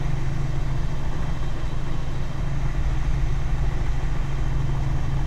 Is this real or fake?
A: real